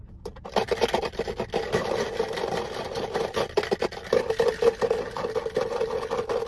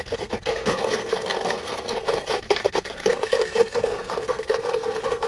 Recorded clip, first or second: first